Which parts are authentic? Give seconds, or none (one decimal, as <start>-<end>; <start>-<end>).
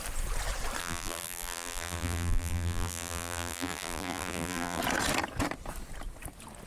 0.0-0.8; 4.8-6.7